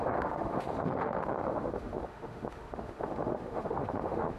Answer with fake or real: fake